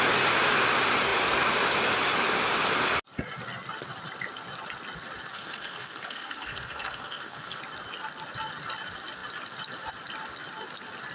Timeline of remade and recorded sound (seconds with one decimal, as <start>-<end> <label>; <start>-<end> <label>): 0.0-5.3 recorded; 5.3-7.6 remade; 7.6-11.1 recorded